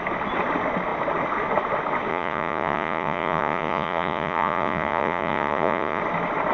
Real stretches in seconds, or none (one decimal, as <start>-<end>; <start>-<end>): 0.0-2.1; 6.0-6.5